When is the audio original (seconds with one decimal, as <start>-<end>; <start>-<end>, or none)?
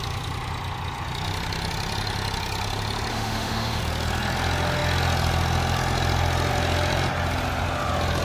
0.0-3.1; 3.8-8.2